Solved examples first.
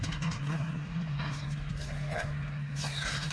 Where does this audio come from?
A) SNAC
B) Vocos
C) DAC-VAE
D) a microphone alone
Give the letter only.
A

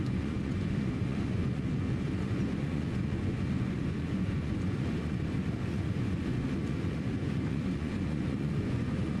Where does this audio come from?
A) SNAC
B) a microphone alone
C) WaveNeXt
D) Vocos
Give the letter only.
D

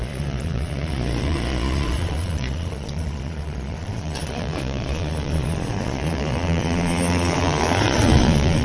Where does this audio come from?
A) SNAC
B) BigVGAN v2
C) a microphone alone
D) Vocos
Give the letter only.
D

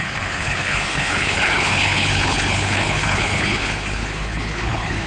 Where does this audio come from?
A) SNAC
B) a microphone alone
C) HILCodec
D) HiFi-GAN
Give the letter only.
C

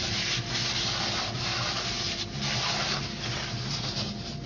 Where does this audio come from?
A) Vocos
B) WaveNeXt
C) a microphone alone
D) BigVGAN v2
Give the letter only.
C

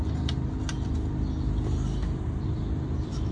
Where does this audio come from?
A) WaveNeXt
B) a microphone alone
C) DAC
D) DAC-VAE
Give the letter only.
B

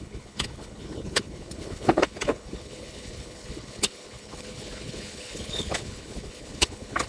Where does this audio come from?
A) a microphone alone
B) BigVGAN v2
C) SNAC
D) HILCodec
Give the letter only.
D